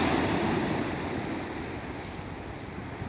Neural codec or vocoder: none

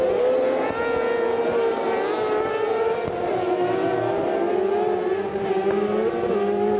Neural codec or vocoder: none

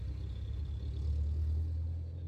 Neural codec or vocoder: none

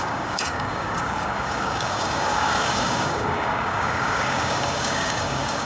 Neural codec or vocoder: codec, DAC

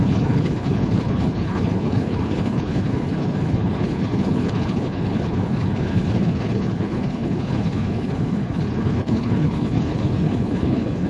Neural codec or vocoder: codec, HILCodec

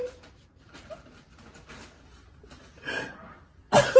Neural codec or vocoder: none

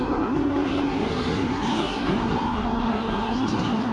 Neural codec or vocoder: codec, SNAC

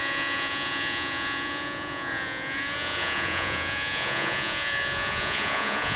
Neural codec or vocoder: vocoder, Vocos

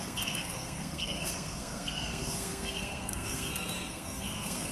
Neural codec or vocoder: codec, SNAC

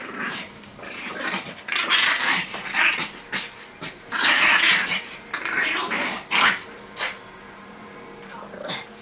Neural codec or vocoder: vocoder, BigVGAN v2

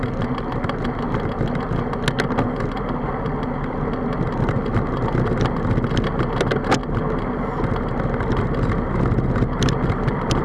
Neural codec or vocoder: none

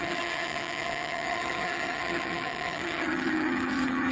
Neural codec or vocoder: vocoder, HiFi-GAN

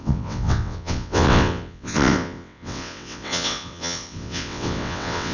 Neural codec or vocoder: vocoder, WaveNeXt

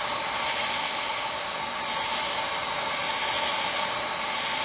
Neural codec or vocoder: none